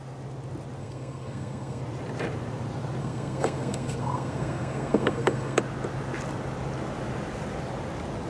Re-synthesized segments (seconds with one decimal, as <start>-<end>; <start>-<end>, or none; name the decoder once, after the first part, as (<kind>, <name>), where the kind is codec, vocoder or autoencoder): 0.8-1.8 (codec, SNAC); 3.0-5.6